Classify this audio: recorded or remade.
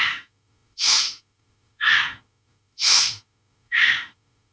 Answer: remade